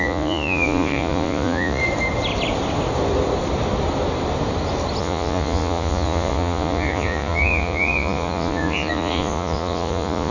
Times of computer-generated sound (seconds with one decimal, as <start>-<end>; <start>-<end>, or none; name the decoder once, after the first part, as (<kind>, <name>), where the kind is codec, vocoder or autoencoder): 0.0-1.8 (vocoder, Vocos); 5.0-10.3